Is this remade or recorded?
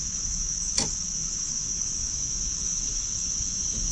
remade